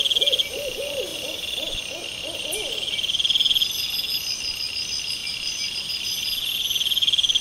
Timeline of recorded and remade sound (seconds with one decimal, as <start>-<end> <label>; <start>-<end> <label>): 0.0-1.1 recorded; 1.1-2.7 remade; 2.7-5.2 recorded; 5.2-5.8 remade; 5.8-7.4 recorded